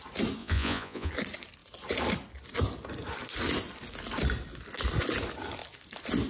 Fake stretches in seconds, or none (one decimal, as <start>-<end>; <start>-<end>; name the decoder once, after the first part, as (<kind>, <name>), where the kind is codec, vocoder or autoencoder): 0.4-1.1 (vocoder, Vocos)